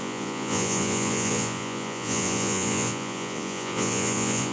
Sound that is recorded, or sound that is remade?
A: remade